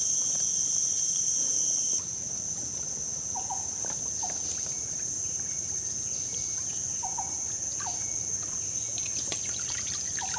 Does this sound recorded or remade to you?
recorded